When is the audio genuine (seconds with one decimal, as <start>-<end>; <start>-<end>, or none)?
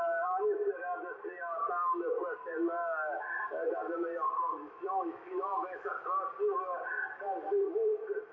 0.0-4.5; 5.9-8.3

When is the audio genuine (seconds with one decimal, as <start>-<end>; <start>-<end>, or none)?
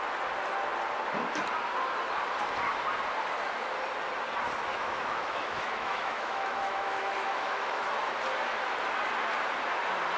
0.0-4.7; 7.8-10.2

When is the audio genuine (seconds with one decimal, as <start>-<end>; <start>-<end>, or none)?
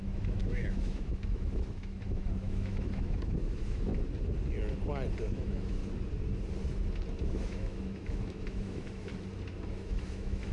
3.9-5.2; 5.8-7.2; 9.1-9.7